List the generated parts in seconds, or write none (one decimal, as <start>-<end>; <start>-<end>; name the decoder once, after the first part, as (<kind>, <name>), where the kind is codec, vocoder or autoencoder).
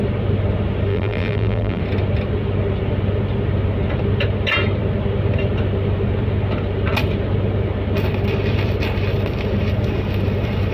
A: 0.9-1.8 (vocoder, BigVGAN v2)